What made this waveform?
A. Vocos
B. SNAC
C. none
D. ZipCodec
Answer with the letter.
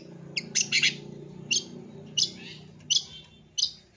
C